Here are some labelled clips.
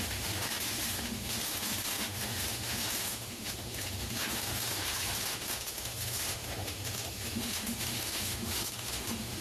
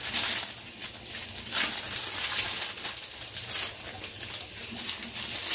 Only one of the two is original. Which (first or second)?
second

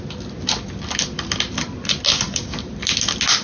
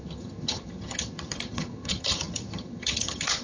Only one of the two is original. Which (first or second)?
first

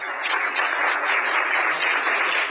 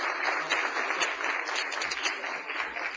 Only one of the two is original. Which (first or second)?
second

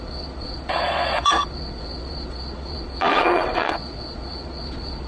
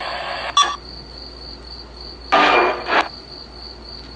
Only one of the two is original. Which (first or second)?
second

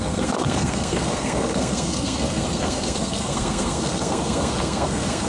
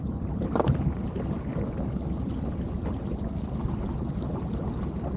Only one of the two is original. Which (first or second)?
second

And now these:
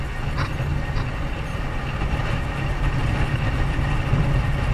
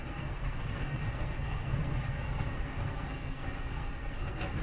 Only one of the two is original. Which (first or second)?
first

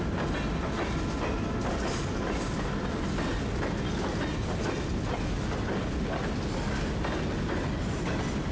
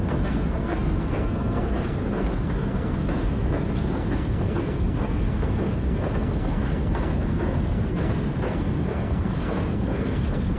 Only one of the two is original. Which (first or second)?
first